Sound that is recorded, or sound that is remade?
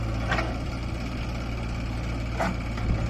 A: recorded